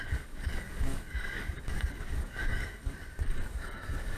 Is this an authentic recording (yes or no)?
no